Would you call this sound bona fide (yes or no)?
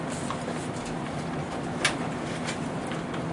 yes